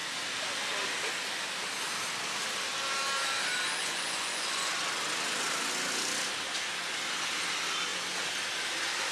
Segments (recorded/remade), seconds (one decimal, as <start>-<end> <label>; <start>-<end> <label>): 0.0-3.8 recorded; 3.8-4.7 remade; 4.7-9.1 recorded